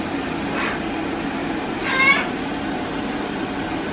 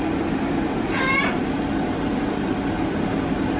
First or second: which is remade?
second